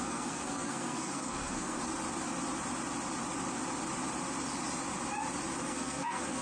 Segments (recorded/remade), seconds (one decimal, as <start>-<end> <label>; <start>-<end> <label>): 0.0-1.8 remade; 1.8-5.6 recorded; 5.6-6.4 remade